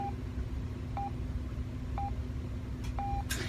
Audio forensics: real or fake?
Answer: real